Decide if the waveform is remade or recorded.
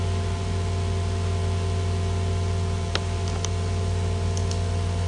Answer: recorded